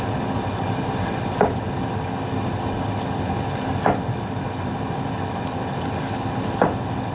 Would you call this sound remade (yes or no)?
no